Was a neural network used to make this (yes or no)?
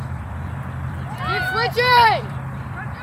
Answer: yes